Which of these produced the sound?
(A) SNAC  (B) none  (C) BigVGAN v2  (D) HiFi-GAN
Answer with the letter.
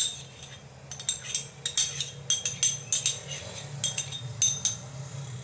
B